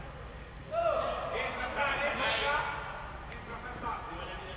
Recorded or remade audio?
recorded